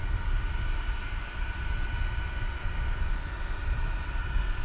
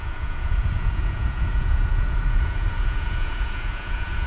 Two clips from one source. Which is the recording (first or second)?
first